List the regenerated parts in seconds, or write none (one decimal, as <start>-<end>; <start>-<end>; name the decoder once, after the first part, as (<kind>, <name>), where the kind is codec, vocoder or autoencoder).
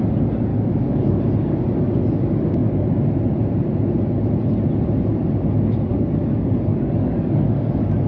0.5-1.2 (codec, DAC); 5.9-8.1